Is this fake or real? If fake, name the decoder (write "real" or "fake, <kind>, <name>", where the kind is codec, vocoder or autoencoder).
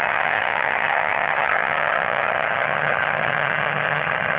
fake, vocoder, HiFi-GAN